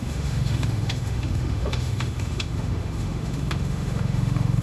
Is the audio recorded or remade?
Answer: remade